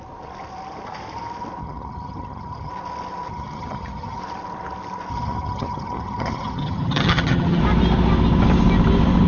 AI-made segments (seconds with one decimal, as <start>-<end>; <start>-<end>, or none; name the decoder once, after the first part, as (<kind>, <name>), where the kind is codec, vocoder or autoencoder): 1.6-2.7 (vocoder, HiFi-GAN); 3.3-4.2; 5.1-7.6